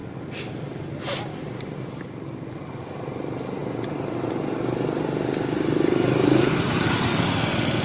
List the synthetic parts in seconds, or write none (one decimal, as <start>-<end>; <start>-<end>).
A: 0.0-3.6; 4.2-7.8